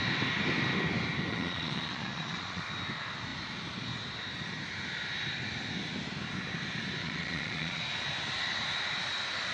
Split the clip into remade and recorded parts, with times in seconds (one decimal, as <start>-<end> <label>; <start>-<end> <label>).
0.0-1.3 recorded; 1.3-2.6 remade; 2.6-7.0 recorded; 7.0-7.8 remade; 7.8-9.5 recorded